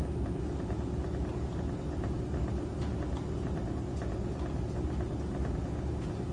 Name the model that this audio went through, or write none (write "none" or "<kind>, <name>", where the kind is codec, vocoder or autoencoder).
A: none